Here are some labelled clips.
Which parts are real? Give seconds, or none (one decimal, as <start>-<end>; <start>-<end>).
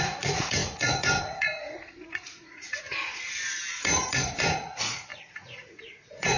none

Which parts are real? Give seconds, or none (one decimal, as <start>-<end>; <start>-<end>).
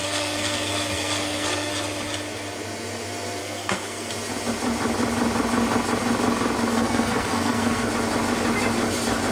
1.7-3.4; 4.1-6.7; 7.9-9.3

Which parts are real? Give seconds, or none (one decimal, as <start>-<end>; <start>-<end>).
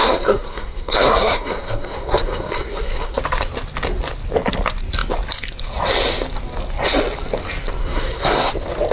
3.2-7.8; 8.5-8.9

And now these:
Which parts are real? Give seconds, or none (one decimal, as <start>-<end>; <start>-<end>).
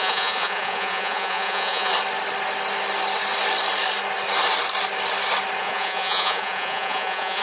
1.9-5.6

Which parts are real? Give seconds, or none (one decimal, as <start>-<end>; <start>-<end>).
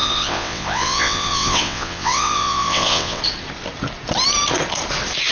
3.2-5.3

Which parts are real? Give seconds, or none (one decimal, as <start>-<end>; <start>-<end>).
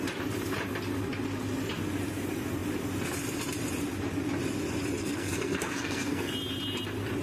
0.0-5.0; 6.3-7.2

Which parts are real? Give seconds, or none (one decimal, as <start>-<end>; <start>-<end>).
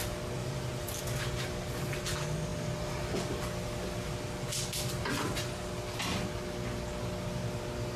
0.0-0.4; 1.0-8.0